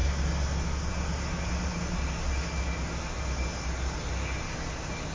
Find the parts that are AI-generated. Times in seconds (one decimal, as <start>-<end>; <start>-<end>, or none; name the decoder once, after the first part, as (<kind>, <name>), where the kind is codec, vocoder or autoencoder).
none